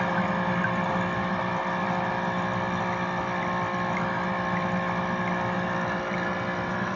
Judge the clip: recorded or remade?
recorded